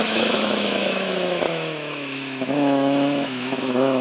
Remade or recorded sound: remade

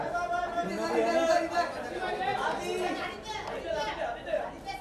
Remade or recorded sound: recorded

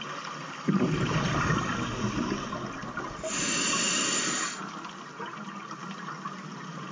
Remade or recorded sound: recorded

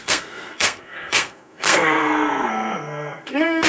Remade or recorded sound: remade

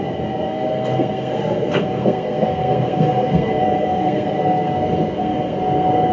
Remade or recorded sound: remade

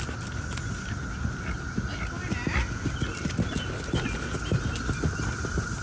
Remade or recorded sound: recorded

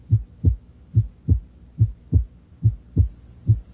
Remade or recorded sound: recorded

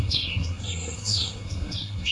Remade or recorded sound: remade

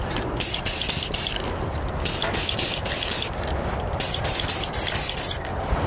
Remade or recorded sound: remade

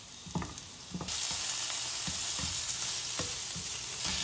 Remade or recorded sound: recorded